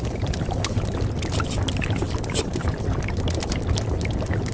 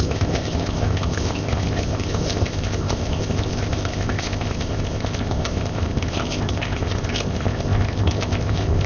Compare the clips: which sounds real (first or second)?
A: first